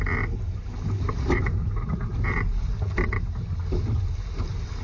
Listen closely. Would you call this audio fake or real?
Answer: real